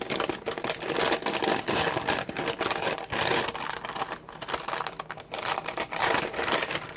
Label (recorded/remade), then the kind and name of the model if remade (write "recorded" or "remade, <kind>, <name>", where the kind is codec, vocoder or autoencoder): recorded